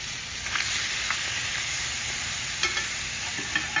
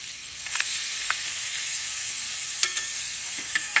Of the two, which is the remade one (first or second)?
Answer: second